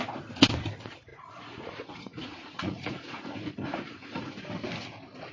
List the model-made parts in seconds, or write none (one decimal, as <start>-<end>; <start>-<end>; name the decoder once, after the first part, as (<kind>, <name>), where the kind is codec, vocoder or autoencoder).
1.1-4.3 (vocoder, Vocos)